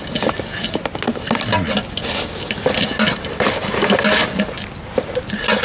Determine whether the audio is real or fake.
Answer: real